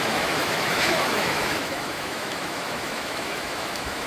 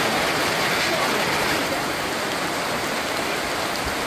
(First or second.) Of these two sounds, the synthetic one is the first